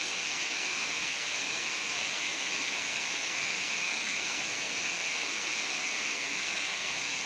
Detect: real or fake fake